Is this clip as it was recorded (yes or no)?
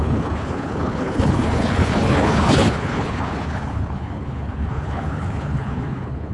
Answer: no